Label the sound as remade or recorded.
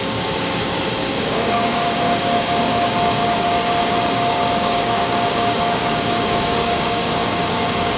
remade